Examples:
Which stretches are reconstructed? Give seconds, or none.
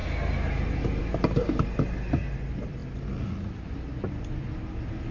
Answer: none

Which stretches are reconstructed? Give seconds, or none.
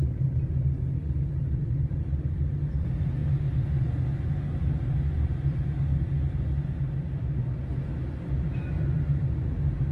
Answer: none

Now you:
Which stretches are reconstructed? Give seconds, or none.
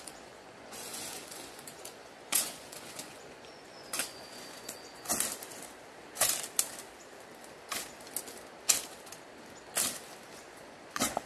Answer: 0.0-5.1 (vocoder, Vocos); 10.3-11.3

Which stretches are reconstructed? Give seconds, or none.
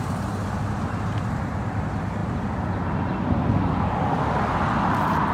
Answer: none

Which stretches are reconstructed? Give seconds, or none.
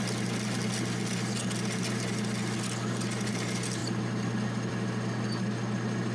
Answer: none